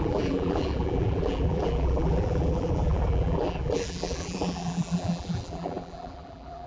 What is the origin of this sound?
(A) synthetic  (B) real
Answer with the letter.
A